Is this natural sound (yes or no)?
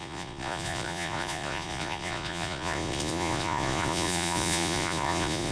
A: no